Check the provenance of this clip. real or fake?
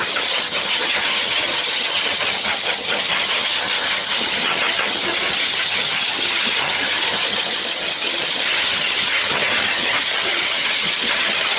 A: fake